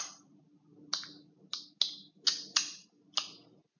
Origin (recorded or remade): recorded